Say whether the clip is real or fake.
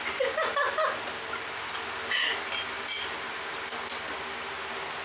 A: real